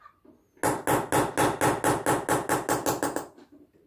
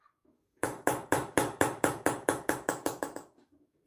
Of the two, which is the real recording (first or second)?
first